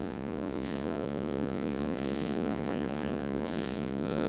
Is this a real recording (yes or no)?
no